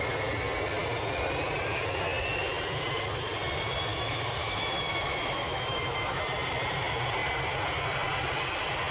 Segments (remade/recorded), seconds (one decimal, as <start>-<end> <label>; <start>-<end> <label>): 0.0-3.9 recorded; 3.9-6.2 remade; 6.2-8.9 recorded